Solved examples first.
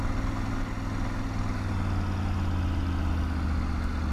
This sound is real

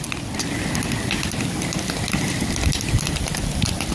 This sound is real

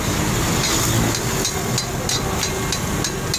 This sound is real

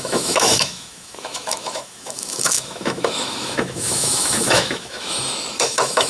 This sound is fake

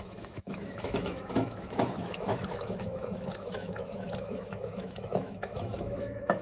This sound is fake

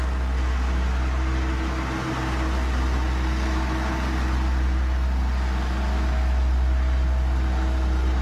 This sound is real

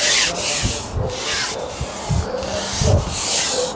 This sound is real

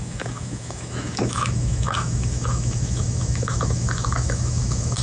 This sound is fake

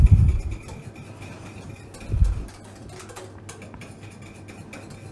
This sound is real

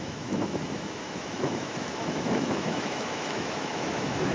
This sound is fake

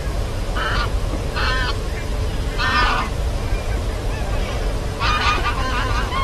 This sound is real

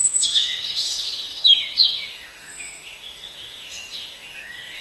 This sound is fake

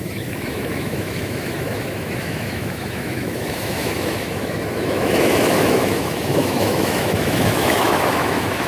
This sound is fake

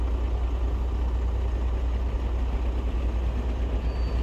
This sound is real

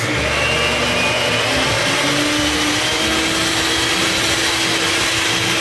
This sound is real